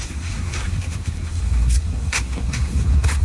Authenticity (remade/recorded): remade